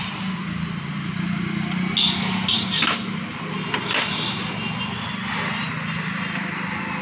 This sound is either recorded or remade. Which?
recorded